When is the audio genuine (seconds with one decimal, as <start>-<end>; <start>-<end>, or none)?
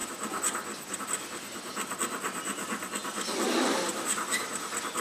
0.0-3.0; 4.5-5.0